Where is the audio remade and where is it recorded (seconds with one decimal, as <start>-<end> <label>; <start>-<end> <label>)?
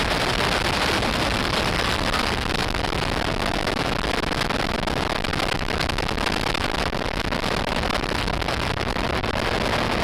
0.0-2.6 remade; 2.6-7.7 recorded; 7.7-9.2 remade; 9.2-10.0 recorded